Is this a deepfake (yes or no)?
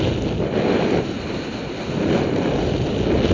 no